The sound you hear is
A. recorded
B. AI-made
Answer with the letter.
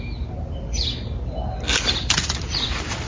A